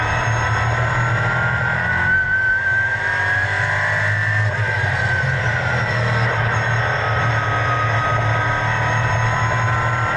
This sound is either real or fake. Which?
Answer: real